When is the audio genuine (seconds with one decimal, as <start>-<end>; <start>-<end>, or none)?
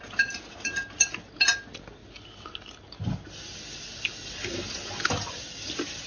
0.0-6.1